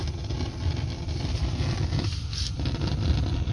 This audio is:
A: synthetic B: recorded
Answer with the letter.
A